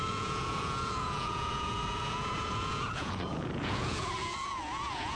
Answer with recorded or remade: remade